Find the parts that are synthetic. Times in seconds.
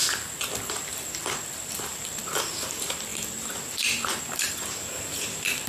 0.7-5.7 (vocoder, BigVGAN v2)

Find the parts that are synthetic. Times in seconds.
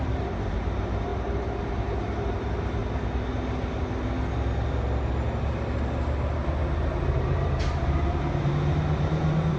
0.0-2.8 (vocoder, BigVGAN v2); 7.0-9.6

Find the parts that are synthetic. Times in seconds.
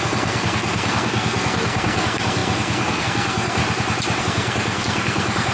0.0-3.6 (codec, SNAC); 4.2-5.5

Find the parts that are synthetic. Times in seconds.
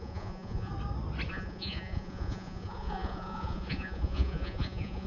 0.0-0.7 (vocoder, Vocos); 1.3-5.1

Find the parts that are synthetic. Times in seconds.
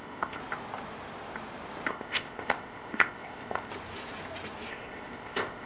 0.0-0.4 (codec, ZipCodec); 1.9-3.7; 4.7-5.7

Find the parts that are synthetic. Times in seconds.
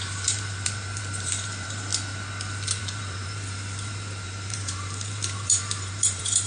0.0-1.9 (vocoder, BigVGAN v2); 2.8-6.5